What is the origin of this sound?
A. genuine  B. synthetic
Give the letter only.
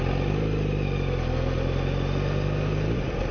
A